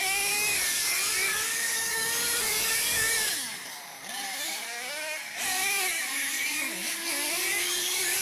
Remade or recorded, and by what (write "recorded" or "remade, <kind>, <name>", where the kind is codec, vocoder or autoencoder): remade, codec, DAC